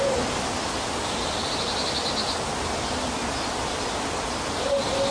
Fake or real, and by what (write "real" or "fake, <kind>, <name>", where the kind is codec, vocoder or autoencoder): real